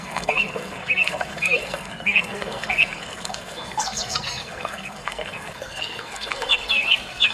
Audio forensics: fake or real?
fake